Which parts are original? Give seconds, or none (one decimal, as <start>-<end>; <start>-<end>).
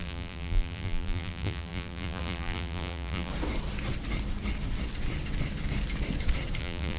3.3-6.6